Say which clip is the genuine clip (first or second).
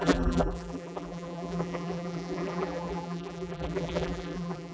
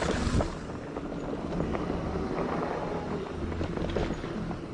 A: second